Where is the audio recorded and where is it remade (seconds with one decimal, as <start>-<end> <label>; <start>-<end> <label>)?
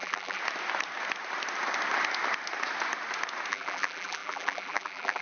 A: 0.0-0.4 remade; 0.4-3.5 recorded; 3.5-5.2 remade